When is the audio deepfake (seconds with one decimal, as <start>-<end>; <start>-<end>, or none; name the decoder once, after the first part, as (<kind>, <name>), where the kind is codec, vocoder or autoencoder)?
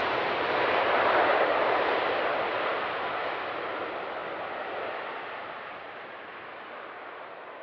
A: 0.0-2.7 (vocoder, BigVGAN v2); 4.2-6.9